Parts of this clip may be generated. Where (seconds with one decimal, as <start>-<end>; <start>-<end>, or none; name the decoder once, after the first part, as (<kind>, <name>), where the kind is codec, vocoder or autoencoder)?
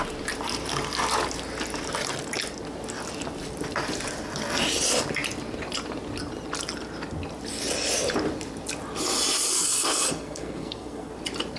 9.5-11.1 (codec, SNAC)